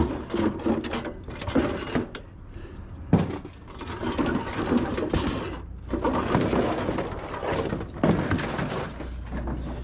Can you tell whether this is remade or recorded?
recorded